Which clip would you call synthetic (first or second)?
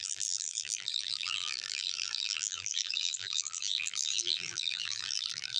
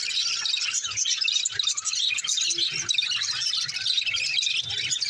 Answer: first